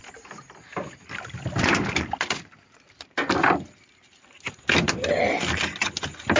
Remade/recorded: recorded